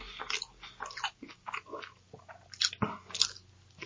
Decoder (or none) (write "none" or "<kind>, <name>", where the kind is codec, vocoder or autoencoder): none